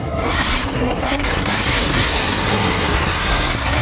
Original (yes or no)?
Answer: no